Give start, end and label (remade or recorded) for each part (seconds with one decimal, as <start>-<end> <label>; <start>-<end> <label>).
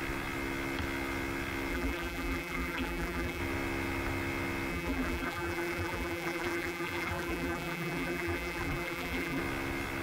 0.0-1.7 recorded; 1.7-3.4 remade; 3.4-4.7 recorded; 4.7-9.4 remade; 9.4-10.0 recorded